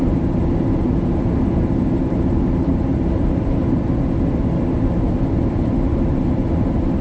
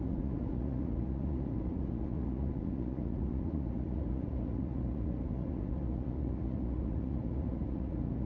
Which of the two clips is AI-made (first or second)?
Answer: second